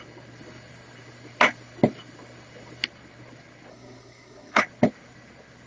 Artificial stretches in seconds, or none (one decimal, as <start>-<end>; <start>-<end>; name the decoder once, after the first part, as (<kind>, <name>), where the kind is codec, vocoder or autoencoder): 3.7-4.6 (codec, SNAC)